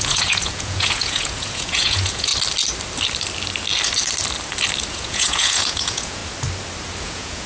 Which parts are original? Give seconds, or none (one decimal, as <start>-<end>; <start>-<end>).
2.3-4.9; 6.2-7.0